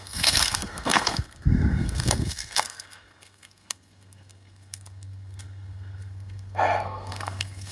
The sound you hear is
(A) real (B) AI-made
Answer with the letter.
B